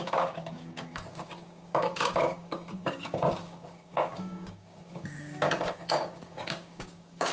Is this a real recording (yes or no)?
no